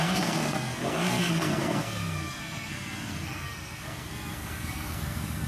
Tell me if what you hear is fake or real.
fake